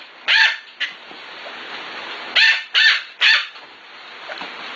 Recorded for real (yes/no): yes